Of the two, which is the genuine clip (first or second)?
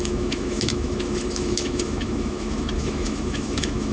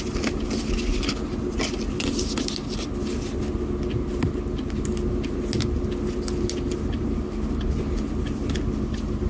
second